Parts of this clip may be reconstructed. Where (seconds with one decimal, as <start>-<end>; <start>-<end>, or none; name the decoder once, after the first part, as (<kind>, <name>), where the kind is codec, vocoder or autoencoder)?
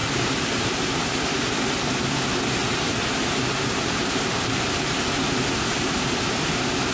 0.0-1.3 (vocoder, BigVGAN v2); 2.6-5.0